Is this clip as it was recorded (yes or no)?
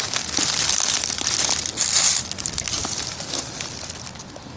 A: yes